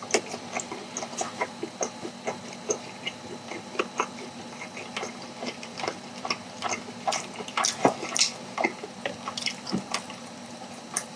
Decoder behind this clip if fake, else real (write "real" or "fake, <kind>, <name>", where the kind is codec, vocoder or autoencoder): fake, vocoder, BigVGAN v2